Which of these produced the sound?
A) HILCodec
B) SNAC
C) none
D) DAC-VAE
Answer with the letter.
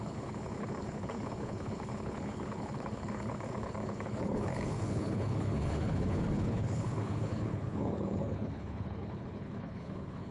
A